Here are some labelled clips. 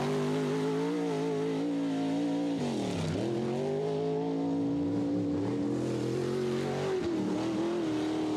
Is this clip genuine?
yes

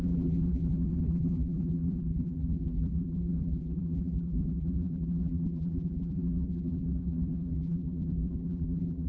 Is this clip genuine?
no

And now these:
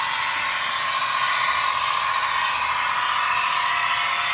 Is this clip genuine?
yes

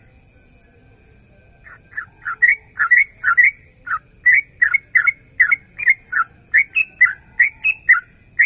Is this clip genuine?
yes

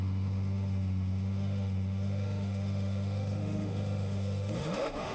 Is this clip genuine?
no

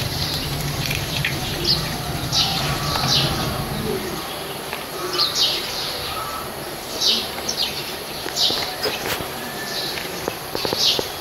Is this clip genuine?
no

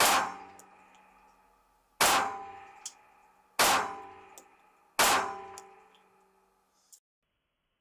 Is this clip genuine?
yes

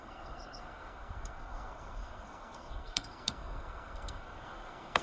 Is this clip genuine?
no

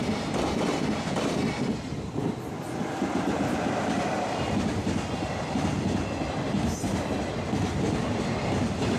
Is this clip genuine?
no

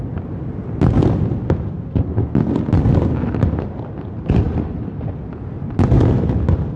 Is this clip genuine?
yes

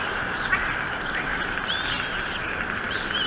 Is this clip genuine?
yes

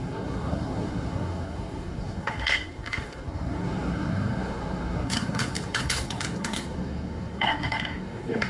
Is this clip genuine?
no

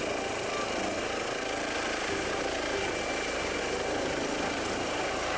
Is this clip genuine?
yes